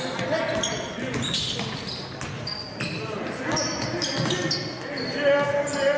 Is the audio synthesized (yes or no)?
no